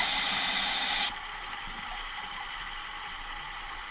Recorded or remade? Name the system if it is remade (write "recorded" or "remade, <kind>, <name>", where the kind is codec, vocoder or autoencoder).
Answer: recorded